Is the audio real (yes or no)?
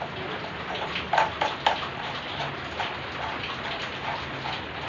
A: yes